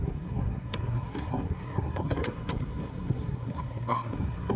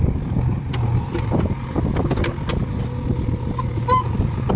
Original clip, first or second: second